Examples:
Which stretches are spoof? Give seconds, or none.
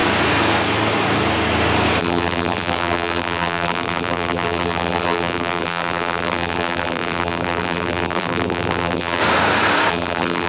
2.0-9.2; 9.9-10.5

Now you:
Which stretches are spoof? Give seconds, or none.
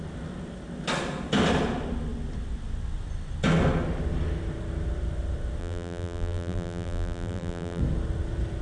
5.6-7.8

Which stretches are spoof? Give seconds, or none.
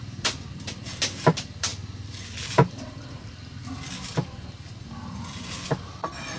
0.0-3.6; 4.8-6.4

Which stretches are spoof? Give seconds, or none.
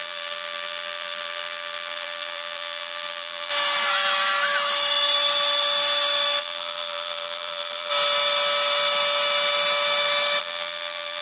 0.0-3.5; 6.4-7.9; 10.4-11.2